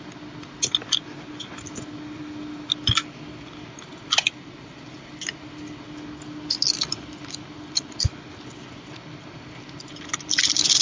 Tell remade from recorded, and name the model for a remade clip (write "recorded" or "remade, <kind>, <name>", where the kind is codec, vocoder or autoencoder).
recorded